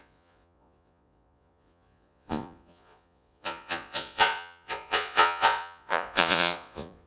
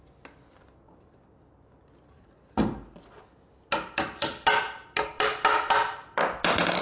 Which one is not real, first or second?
first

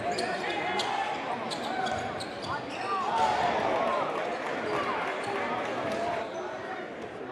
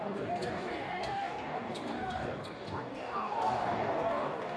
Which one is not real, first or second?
second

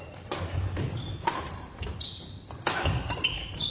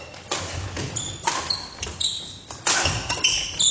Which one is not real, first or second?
first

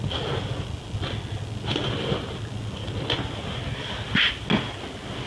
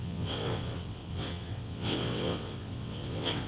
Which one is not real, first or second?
second